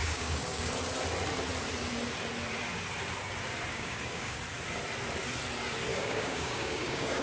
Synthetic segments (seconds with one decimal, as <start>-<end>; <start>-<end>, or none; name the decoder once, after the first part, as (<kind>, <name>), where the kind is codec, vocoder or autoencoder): 0.0-0.7 (codec, DAC); 3.7-4.4; 5.9-7.2